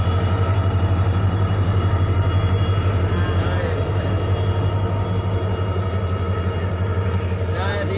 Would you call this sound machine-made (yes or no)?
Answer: no